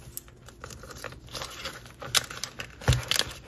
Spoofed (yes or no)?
no